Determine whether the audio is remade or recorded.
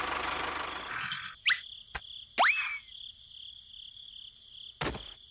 recorded